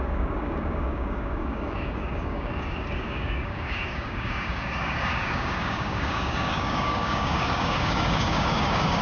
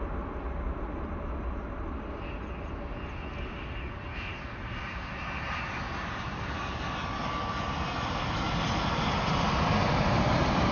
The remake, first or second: first